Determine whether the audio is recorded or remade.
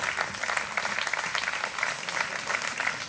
recorded